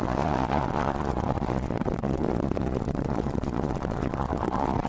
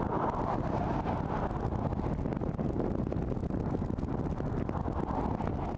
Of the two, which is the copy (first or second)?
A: first